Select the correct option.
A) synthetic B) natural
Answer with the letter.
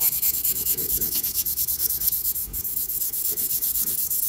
A